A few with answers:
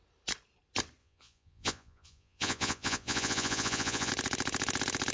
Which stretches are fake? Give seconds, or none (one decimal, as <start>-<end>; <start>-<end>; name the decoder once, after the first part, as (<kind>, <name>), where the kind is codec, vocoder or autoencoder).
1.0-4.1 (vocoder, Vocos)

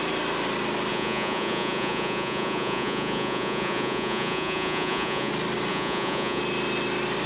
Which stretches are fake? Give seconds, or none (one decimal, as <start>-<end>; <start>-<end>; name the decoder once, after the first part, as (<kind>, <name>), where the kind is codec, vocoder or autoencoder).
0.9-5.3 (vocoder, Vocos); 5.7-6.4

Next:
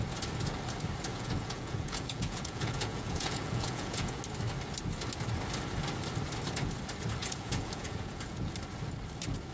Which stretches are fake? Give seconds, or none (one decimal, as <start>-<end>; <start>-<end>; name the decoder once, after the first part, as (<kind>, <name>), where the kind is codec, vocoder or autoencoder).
1.1-4.2 (vocoder, Vocos); 7.2-8.5